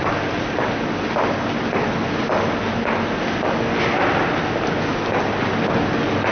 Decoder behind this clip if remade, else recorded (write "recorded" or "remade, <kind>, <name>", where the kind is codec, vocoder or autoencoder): recorded